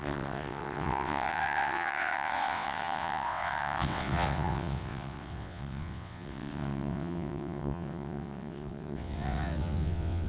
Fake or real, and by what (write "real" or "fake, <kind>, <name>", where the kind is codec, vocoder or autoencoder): fake, vocoder, WaveNeXt